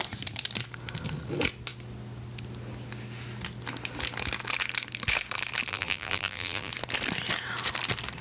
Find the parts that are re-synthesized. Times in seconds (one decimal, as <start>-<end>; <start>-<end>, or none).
5.7-6.7